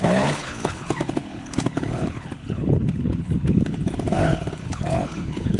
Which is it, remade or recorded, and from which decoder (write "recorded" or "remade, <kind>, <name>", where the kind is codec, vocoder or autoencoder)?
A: remade, codec, HILCodec